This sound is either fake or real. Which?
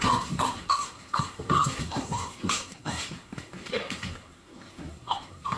fake